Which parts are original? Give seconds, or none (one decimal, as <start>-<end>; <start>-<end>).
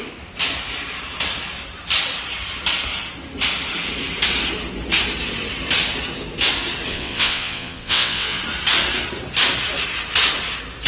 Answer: 0.0-6.9; 8.4-10.9